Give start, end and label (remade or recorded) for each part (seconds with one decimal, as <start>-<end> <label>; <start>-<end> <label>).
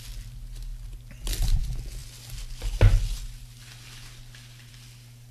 0.0-5.3 recorded